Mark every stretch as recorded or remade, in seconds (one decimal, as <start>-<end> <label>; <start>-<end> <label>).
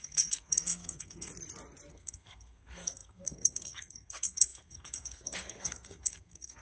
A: 0.0-1.3 remade; 1.3-1.9 recorded; 1.9-6.6 remade